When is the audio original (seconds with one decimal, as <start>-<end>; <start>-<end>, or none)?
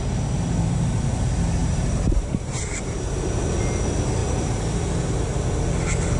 0.0-1.6; 3.4-4.2; 4.7-6.2